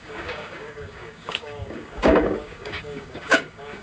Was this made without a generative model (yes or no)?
no